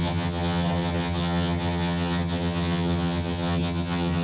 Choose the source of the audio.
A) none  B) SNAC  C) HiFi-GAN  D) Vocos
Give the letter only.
C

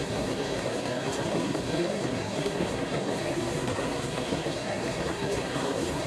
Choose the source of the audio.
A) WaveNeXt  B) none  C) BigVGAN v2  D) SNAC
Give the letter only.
D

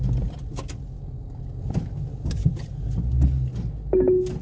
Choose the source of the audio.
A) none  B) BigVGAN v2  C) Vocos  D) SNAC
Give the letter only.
A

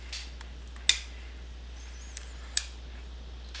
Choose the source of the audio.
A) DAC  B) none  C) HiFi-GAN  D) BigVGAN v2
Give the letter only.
B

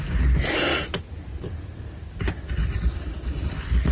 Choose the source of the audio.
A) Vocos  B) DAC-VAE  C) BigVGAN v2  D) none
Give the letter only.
D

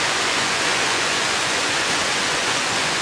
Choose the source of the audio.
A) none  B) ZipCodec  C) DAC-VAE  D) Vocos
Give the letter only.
D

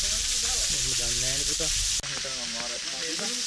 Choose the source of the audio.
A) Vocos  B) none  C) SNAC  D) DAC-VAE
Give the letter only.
B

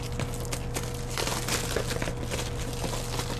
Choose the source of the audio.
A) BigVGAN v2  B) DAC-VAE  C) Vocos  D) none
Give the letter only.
D